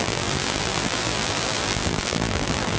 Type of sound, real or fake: fake